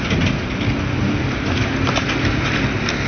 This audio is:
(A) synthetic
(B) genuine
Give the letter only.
B